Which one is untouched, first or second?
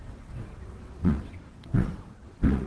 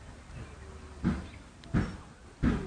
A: second